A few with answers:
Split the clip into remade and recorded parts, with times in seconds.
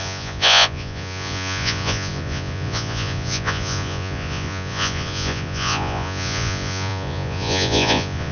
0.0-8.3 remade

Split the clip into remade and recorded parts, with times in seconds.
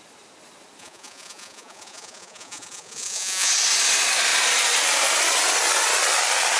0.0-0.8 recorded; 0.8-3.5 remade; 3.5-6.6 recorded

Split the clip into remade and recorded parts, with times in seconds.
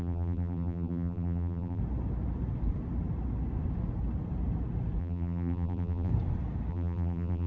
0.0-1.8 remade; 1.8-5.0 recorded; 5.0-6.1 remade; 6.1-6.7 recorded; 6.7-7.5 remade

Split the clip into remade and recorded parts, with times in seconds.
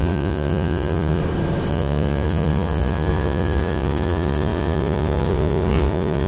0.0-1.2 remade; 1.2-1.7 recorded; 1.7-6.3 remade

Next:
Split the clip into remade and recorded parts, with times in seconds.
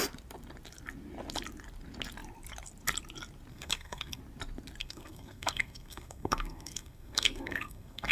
0.0-3.5 recorded; 3.5-4.2 remade; 4.2-4.8 recorded; 4.8-8.1 remade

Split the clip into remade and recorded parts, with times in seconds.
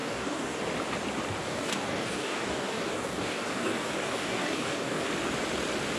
0.0-0.6 remade; 0.6-1.4 recorded; 1.4-5.0 remade; 5.0-6.0 recorded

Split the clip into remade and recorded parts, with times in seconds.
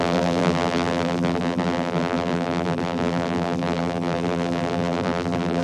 0.0-5.6 remade